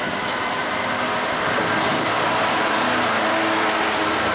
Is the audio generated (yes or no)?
no